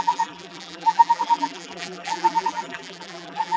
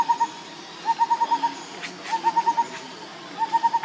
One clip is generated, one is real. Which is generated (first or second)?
first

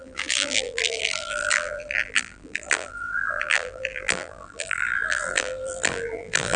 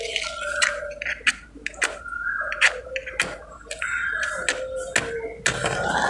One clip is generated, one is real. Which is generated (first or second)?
first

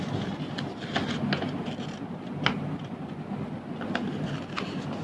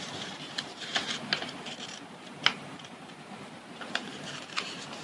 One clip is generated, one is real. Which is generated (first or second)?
second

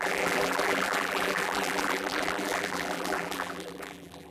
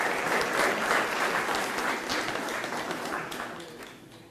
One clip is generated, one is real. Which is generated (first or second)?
first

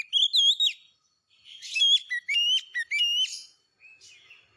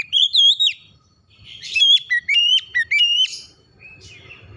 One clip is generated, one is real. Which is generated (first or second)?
second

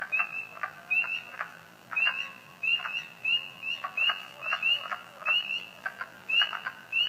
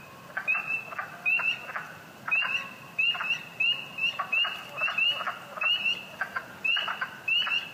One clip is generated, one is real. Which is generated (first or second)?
first